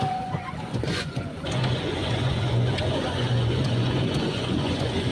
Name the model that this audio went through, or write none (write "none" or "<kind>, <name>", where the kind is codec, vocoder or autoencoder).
vocoder, Vocos